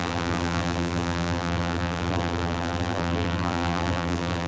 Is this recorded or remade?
remade